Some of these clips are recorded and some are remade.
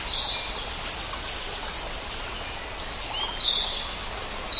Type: recorded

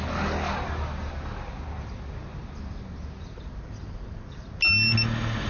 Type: recorded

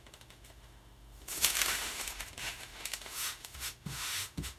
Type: remade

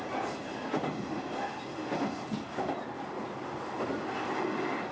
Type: recorded